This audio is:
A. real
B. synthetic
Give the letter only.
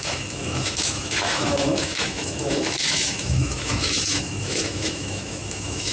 B